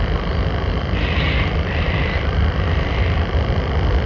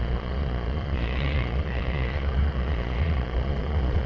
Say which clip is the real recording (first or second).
first